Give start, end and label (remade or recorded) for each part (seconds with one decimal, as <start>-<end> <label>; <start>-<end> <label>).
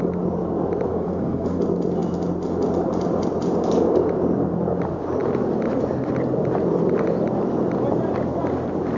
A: 0.0-0.9 recorded; 0.9-1.6 remade; 1.6-9.0 recorded